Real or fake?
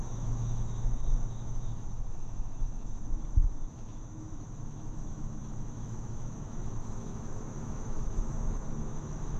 fake